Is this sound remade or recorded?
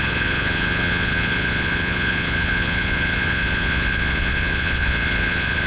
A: remade